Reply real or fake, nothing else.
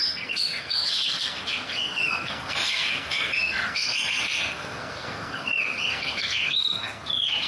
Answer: fake